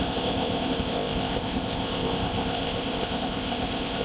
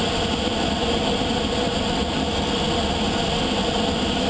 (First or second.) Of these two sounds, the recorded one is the second